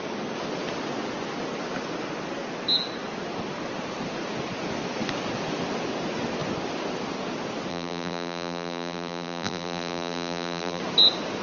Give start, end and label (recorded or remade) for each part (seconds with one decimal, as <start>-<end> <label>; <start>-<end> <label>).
0.0-7.7 recorded; 7.7-10.8 remade; 10.8-11.4 recorded